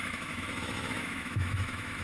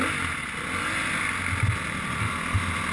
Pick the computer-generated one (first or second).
first